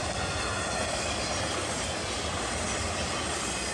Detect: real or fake real